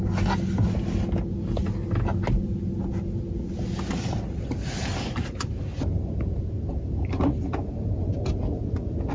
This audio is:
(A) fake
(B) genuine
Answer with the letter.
B